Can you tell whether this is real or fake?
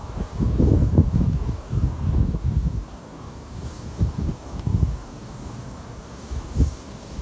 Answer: fake